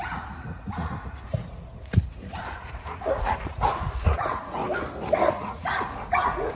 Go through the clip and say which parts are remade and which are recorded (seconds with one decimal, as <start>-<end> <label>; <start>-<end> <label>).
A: 0.0-4.6 remade; 4.6-5.3 recorded; 5.3-6.6 remade